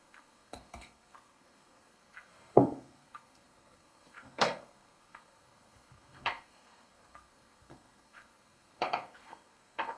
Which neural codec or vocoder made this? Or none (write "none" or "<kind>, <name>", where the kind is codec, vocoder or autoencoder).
codec, SNAC